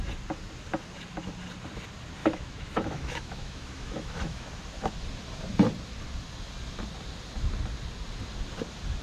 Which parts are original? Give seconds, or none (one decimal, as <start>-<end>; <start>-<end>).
0.0-2.2; 4.5-9.0